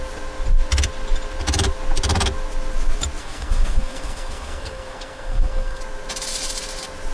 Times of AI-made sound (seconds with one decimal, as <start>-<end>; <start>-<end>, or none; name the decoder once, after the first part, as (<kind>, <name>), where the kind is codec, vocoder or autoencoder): 3.2-5.8 (codec, SNAC)